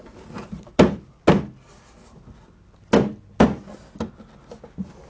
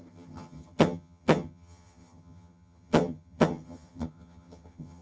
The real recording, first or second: first